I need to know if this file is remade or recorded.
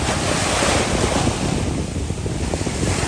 recorded